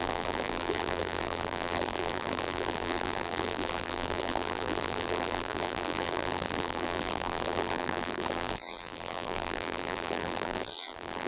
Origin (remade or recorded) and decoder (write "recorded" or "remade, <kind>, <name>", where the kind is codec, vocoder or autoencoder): remade, vocoder, BigVGAN v2